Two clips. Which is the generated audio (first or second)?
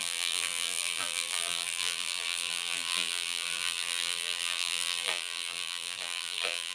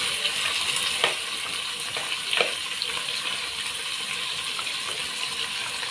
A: first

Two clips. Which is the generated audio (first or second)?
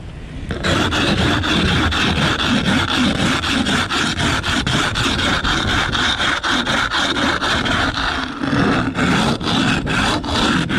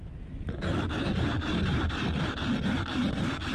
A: second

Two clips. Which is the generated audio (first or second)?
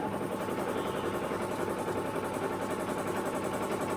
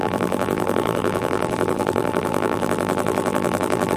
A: second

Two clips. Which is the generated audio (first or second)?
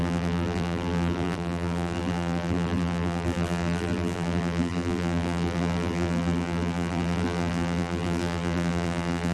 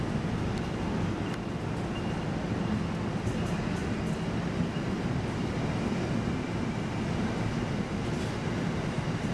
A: first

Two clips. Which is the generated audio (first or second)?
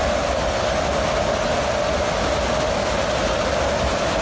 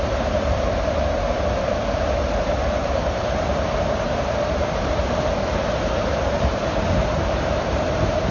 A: second